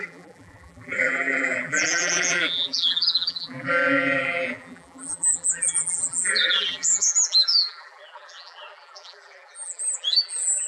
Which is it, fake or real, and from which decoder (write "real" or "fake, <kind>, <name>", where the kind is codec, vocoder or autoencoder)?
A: fake, vocoder, BigVGAN v2